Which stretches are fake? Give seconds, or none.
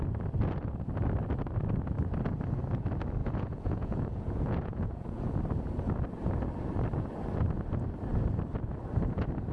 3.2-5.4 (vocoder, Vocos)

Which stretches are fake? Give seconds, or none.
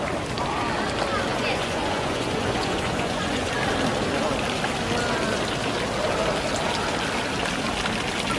1.3-3.5 (vocoder, Vocos)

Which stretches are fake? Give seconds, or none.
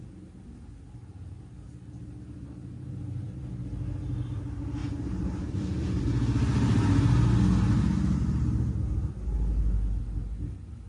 4.8-6.0 (vocoder, BigVGAN v2)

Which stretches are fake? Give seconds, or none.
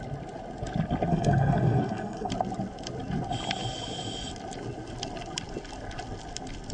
1.1-2.3 (codec, SNAC)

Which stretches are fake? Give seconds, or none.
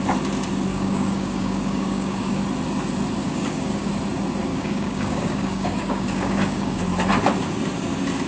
0.7-2.4 (codec, DAC); 3.2-3.9; 4.5-6.8